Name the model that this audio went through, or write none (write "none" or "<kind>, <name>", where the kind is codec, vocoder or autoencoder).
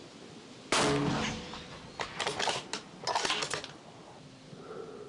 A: none